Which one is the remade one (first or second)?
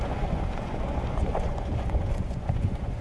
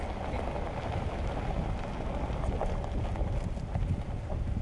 first